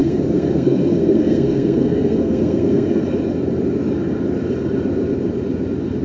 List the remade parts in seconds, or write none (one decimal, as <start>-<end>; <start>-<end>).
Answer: 0.0-3.0